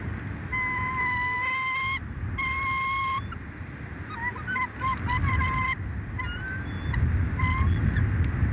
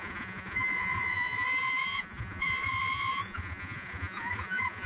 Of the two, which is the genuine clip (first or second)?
first